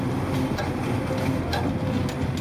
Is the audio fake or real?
real